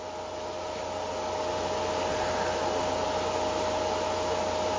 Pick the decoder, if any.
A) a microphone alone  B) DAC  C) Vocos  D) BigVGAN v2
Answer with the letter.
A